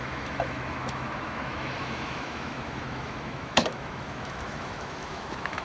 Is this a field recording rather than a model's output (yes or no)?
no